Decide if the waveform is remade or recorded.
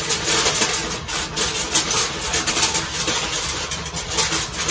recorded